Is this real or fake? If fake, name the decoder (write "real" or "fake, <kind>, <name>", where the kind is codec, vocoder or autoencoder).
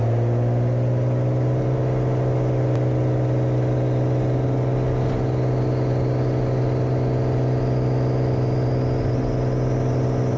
real